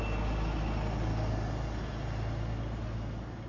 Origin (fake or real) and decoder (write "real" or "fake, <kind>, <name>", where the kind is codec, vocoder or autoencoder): real